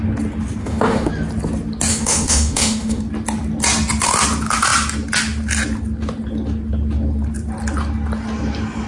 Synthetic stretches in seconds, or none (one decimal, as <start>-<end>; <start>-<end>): 0.6-1.1; 1.9-3.0